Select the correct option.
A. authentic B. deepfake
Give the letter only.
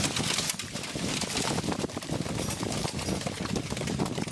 A